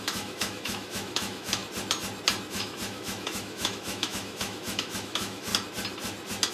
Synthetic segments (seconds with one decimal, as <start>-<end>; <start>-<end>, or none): 0.0-1.6; 2.5-5.5